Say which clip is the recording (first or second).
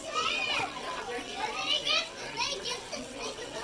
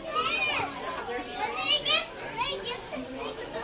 second